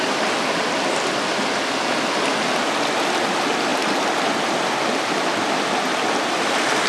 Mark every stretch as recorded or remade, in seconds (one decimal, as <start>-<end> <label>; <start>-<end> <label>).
0.0-6.9 recorded